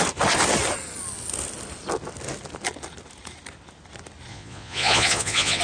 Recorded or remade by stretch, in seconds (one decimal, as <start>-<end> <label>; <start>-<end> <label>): 0.0-4.3 recorded; 4.3-5.6 remade